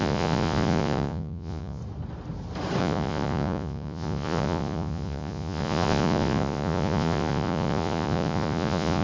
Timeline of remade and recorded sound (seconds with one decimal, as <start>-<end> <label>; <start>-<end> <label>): 0.0-1.8 remade; 1.8-2.8 recorded; 2.8-9.0 remade